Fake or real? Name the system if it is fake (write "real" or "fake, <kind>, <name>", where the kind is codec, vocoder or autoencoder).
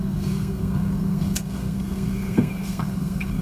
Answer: fake, codec, SNAC